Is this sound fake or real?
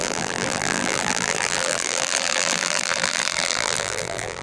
fake